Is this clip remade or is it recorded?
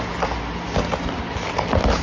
recorded